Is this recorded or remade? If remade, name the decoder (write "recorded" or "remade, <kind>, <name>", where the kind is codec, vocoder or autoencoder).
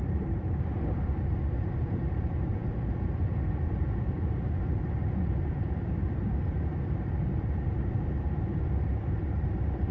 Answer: remade, vocoder, BigVGAN v2